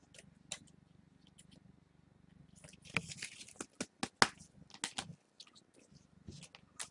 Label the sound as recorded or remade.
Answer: recorded